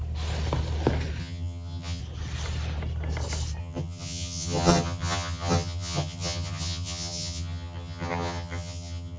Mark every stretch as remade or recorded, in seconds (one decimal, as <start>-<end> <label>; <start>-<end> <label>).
0.0-1.2 recorded; 1.2-2.0 remade; 2.0-3.6 recorded; 3.6-9.2 remade